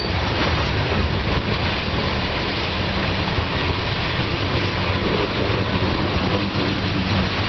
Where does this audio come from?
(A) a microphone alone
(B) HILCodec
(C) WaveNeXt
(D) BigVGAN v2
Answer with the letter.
A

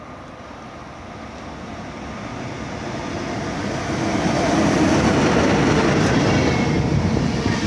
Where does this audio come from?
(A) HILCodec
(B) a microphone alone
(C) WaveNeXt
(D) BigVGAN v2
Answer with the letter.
B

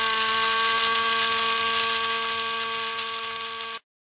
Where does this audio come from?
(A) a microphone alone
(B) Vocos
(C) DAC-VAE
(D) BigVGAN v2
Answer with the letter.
A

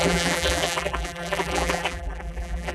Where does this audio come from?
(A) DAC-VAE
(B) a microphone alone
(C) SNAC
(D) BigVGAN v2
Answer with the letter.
D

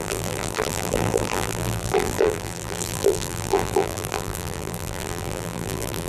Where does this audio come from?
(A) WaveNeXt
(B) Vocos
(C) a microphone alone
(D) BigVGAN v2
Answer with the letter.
D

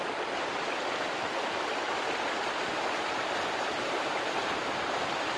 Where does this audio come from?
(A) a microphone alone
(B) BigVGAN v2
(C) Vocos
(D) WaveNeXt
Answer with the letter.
B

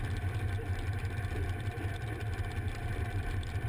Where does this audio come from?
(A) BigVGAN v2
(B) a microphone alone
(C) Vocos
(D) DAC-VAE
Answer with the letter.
A